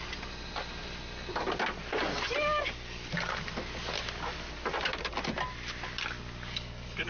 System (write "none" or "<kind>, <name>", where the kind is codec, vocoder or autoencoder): none